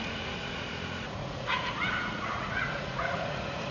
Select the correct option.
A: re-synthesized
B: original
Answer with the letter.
A